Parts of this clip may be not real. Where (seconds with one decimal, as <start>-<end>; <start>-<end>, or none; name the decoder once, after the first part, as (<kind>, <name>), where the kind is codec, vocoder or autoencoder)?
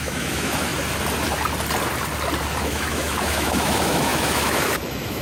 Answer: 0.0-0.7 (autoencoder, DAC-VAE); 2.6-5.2